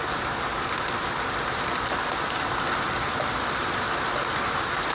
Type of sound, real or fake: real